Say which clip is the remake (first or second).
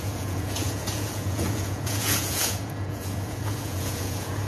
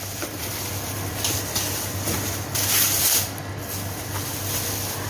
first